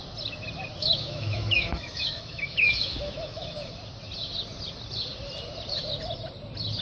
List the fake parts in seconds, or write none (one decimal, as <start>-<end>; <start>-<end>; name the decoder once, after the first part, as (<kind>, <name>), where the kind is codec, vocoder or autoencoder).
0.8-3.7 (autoencoder, DAC-VAE)